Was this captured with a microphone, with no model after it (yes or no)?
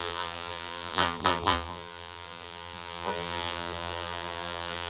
no